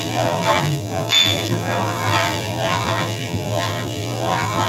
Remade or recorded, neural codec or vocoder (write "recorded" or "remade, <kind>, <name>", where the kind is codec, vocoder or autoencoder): remade, vocoder, BigVGAN v2